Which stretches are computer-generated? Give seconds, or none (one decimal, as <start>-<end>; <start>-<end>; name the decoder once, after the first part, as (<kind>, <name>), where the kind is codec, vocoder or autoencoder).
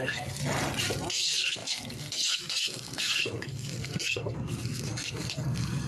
0.0-0.4 (codec, SNAC); 1.1-5.9